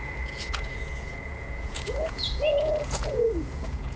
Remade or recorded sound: remade